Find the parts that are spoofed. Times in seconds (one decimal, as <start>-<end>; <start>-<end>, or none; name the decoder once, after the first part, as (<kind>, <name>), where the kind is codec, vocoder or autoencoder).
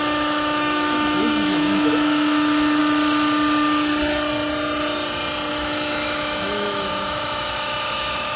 0.0-2.8 (autoencoder, DAC-VAE); 5.5-8.4